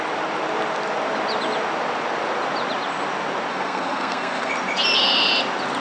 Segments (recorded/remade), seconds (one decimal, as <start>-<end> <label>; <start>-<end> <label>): 0.0-3.5 recorded; 3.5-4.5 remade; 4.5-5.8 recorded